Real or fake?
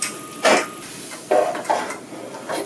real